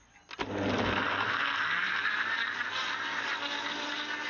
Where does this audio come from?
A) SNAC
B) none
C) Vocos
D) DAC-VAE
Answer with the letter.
B